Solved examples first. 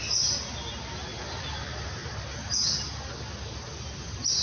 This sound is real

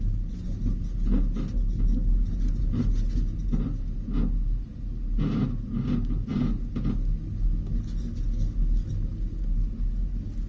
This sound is real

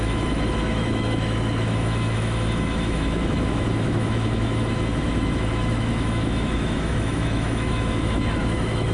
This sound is fake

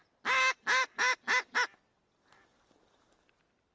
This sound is real